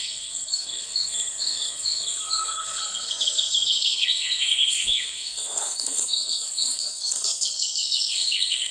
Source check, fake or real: fake